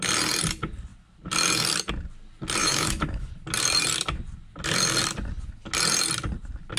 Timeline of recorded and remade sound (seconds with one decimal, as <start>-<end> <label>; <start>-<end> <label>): 0.0-2.6 recorded; 2.6-3.3 remade; 3.3-6.8 recorded